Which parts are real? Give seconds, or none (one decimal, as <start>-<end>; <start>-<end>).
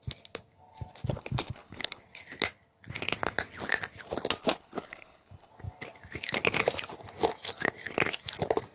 0.0-1.1; 2.0-4.4; 5.5-8.7